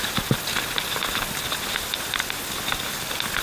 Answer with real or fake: real